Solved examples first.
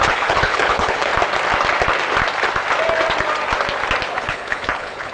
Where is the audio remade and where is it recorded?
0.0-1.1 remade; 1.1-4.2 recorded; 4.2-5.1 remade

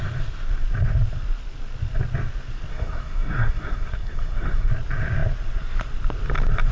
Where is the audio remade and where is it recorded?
0.0-2.7 recorded; 2.7-4.7 remade; 4.7-6.7 recorded

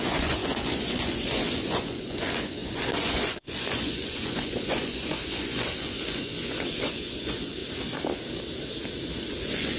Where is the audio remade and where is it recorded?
0.0-7.6 remade; 7.6-9.3 recorded; 9.3-9.8 remade